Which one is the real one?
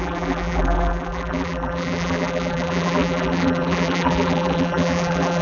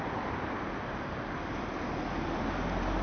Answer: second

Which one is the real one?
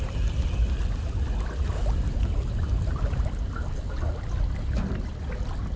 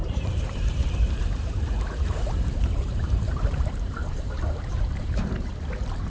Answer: first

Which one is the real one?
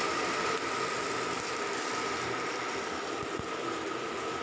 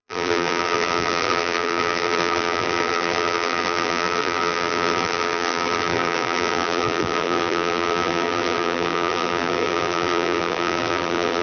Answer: first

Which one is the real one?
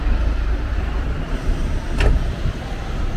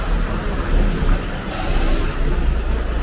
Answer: second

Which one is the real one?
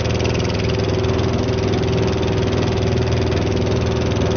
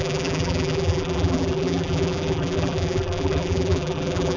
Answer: first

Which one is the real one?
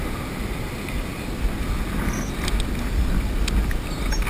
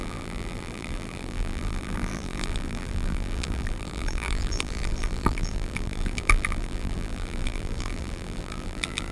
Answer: first